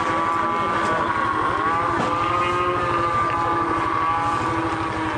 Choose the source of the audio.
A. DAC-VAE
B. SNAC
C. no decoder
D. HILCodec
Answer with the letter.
C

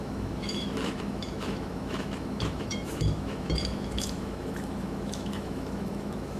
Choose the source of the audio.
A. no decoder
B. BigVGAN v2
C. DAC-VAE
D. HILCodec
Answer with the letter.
C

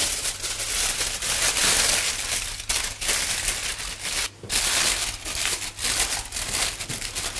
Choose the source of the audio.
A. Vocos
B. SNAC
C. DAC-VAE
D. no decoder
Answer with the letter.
D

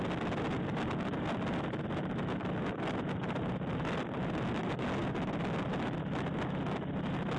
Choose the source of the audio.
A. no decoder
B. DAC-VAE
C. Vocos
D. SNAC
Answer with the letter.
A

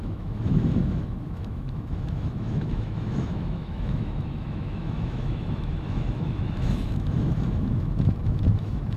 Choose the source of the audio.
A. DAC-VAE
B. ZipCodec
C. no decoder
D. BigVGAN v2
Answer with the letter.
A